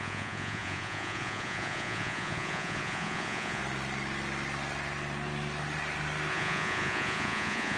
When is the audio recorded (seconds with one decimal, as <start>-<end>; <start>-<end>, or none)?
3.6-6.3